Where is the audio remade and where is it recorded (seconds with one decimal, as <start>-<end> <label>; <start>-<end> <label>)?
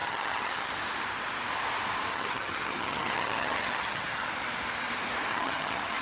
0.0-0.7 remade; 0.7-2.1 recorded; 2.1-4.3 remade; 4.3-5.3 recorded; 5.3-6.0 remade